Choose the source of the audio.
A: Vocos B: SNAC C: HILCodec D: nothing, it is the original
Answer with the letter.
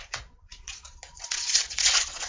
A